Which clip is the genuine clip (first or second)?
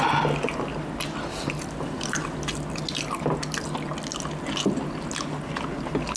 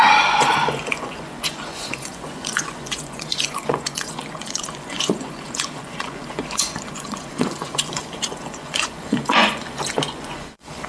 first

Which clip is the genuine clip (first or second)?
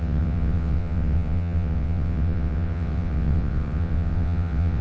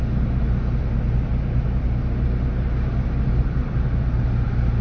second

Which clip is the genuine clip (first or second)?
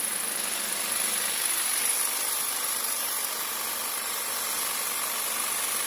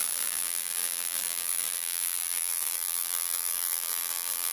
first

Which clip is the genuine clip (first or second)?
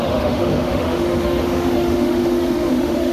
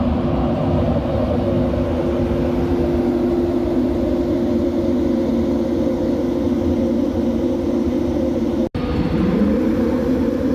second